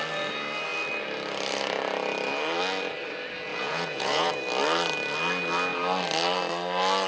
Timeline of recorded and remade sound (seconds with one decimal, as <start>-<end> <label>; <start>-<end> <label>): 0.0-3.5 recorded; 3.5-4.3 remade; 4.3-7.1 recorded